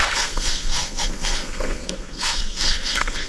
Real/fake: fake